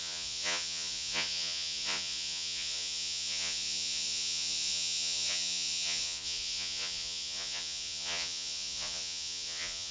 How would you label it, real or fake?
fake